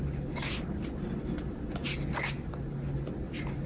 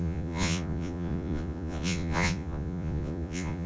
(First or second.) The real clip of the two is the first